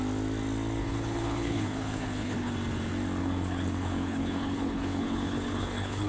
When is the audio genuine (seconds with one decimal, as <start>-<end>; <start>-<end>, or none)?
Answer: 0.0-0.8; 2.5-3.2